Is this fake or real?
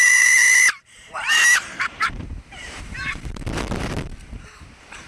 fake